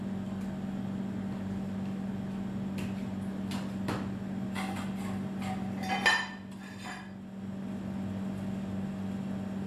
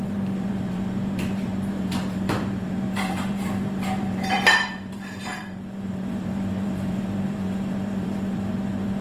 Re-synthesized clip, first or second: second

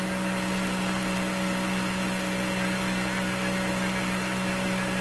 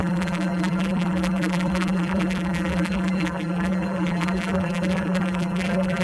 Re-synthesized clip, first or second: second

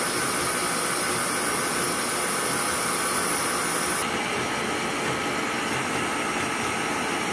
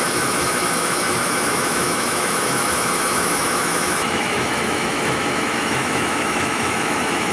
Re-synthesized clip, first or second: second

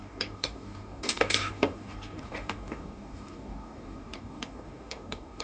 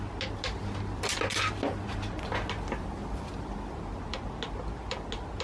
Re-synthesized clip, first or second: first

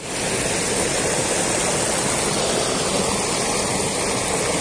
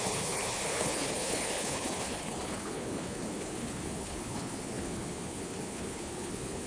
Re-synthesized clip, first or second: second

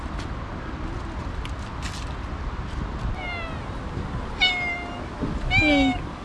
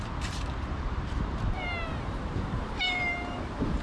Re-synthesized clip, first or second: second